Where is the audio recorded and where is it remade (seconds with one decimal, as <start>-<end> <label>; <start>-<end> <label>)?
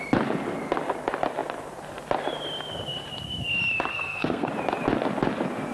0.0-3.9 recorded; 3.9-4.5 remade; 4.5-5.7 recorded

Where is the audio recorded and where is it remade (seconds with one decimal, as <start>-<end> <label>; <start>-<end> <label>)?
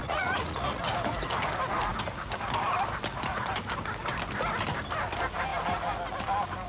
0.0-0.8 remade; 0.8-6.7 recorded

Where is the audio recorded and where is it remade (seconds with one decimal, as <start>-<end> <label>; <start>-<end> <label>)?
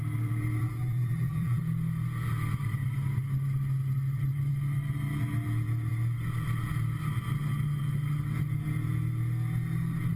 0.0-0.6 recorded; 0.6-1.6 remade; 1.6-10.2 recorded